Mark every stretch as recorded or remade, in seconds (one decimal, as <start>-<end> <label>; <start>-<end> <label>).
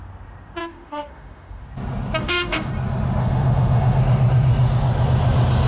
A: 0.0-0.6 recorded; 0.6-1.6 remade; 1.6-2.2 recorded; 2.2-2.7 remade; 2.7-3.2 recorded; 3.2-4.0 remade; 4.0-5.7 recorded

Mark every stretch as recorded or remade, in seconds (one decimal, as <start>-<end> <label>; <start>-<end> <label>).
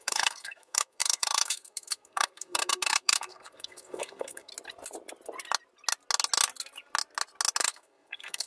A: 0.0-4.5 remade; 4.5-7.6 recorded; 7.6-8.5 remade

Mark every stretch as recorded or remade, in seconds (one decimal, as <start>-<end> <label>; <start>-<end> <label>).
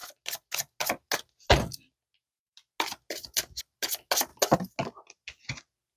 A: 0.0-6.0 recorded